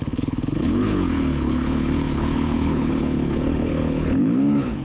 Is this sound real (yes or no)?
no